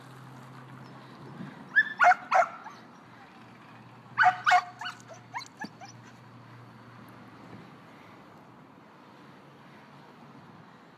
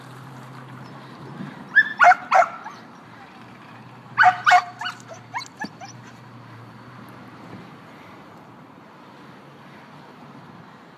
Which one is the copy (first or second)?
second